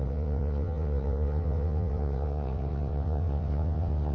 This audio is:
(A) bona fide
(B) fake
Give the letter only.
B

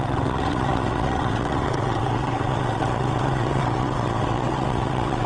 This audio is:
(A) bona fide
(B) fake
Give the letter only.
B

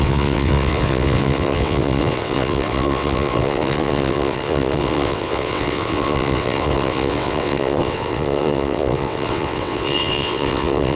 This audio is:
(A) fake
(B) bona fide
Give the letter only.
A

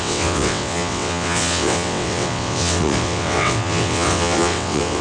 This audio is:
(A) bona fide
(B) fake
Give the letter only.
B